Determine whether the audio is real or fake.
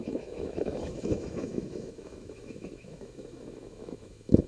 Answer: fake